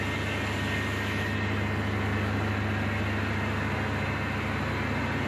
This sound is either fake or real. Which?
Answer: real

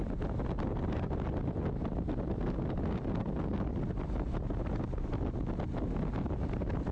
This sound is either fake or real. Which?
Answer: real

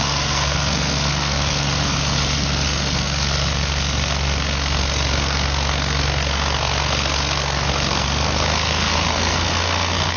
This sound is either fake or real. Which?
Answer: fake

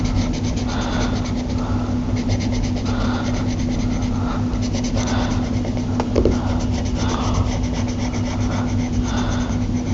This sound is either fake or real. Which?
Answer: real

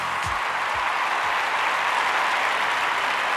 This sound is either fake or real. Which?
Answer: real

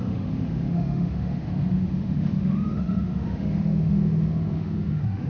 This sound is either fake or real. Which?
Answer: fake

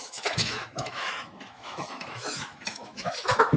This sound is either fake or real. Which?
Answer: fake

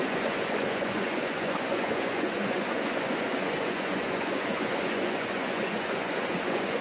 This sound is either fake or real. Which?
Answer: fake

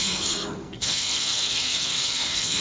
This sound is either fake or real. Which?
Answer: fake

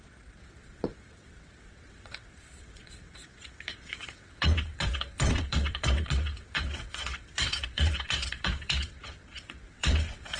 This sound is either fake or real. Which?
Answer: fake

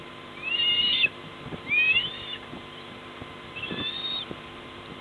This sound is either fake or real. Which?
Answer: fake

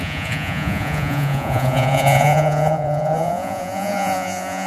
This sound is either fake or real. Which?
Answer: fake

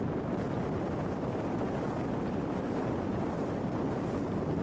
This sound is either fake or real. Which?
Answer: real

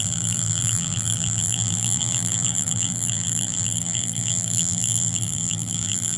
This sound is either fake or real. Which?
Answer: fake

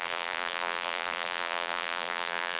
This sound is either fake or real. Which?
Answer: fake